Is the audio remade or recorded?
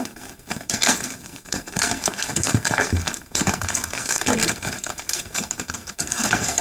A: remade